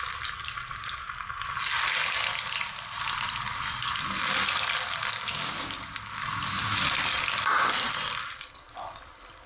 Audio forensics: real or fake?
real